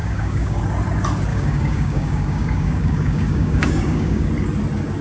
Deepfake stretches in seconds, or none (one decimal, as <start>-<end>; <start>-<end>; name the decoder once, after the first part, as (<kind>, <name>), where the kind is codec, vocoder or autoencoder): 0.0-0.6 (codec, DAC); 1.3-4.3